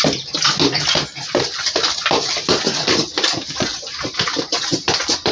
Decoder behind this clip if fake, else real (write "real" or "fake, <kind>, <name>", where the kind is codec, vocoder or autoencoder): real